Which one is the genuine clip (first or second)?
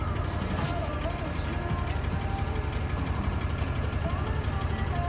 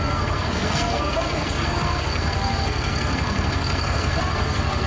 first